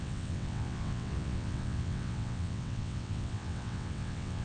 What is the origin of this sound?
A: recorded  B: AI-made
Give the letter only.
B